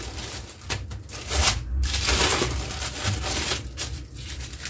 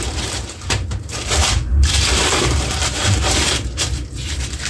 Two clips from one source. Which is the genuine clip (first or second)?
first